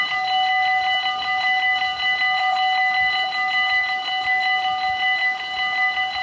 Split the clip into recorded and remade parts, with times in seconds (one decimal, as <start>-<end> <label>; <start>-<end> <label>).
0.0-6.2 recorded